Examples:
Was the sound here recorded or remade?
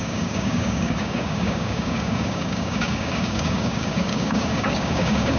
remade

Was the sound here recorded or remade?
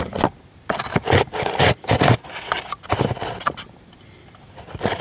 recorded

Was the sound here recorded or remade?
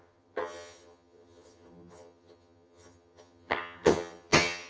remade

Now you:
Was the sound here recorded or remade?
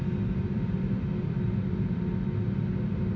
recorded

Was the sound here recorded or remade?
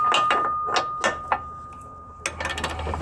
recorded